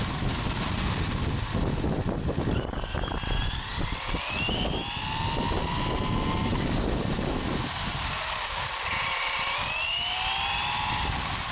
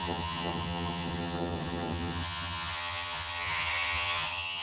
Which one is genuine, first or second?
first